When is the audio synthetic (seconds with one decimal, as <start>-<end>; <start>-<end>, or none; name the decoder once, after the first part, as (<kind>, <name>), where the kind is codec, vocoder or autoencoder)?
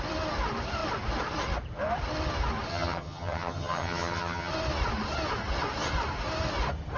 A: 2.7-4.5 (vocoder, HiFi-GAN)